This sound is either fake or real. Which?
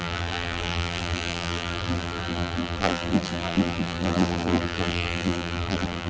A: fake